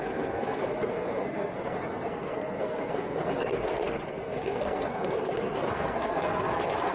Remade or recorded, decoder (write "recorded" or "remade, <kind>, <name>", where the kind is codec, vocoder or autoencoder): remade, codec, SNAC